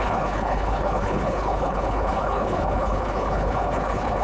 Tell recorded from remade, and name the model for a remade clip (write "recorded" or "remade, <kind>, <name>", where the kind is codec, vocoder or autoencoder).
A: remade, codec, HILCodec